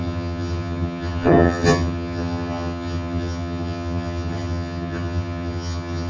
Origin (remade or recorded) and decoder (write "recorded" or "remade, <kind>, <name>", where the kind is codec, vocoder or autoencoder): remade, vocoder, HiFi-GAN